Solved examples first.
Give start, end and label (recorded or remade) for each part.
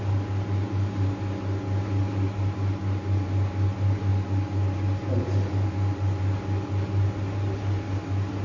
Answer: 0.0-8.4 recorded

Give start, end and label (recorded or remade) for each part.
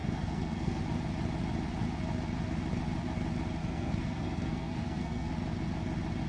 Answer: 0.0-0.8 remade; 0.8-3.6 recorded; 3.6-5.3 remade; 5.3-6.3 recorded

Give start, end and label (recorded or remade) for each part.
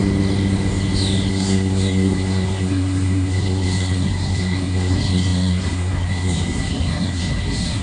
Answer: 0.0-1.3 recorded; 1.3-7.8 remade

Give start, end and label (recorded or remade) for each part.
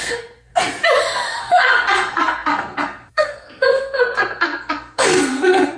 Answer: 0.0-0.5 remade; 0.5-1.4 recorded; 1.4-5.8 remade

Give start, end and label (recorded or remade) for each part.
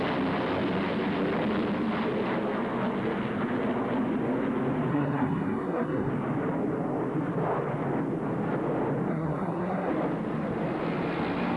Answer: 0.0-4.9 recorded; 4.9-6.1 remade; 6.1-9.1 recorded; 9.1-9.9 remade; 9.9-11.6 recorded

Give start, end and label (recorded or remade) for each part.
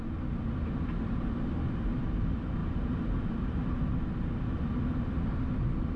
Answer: 0.0-6.0 recorded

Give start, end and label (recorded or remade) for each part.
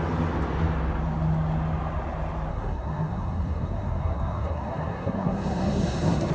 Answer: 0.0-2.5 recorded; 2.5-6.3 remade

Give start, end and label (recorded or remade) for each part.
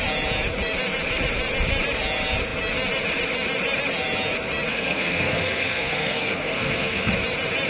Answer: 0.0-4.7 recorded; 4.7-7.1 remade; 7.1-7.7 recorded